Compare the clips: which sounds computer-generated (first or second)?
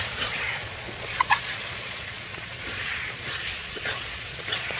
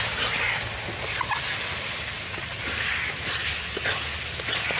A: first